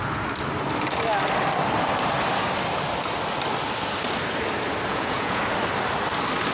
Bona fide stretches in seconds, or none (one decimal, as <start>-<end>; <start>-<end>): 0.0-4.9; 5.4-6.5